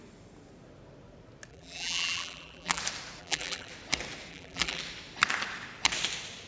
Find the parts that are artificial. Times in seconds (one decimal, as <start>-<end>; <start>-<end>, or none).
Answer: 1.5-2.8; 3.2-3.7; 4.3-4.8